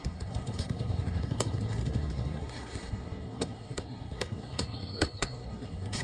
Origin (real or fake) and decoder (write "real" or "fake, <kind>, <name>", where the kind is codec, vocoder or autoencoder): fake, codec, SNAC